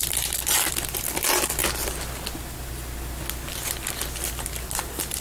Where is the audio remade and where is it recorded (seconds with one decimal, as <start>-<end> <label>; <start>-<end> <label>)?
0.0-1.6 remade; 1.6-4.3 recorded; 4.3-5.2 remade